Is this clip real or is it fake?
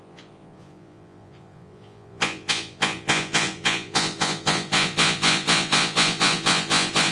fake